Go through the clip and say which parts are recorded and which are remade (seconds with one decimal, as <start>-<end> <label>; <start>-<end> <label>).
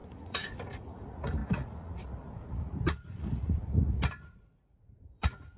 0.0-5.6 remade